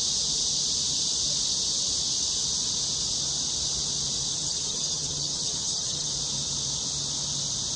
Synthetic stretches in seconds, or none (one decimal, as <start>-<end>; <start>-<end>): 4.3-6.1